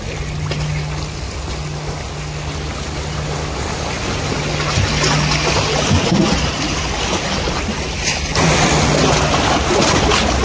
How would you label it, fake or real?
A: real